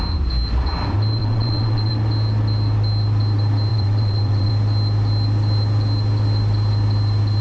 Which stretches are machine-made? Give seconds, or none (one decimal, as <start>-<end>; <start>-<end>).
1.2-1.9; 3.7-4.5